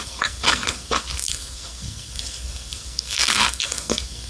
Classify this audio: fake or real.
fake